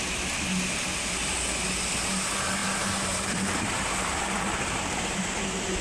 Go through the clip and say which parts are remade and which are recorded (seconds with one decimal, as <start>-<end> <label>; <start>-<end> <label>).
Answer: 0.0-2.6 recorded; 2.6-5.8 remade